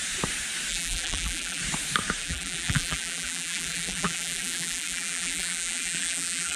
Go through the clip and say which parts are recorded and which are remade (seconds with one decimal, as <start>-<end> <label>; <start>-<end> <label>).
0.0-0.7 recorded; 0.7-1.6 remade; 1.6-2.2 recorded; 2.2-6.6 remade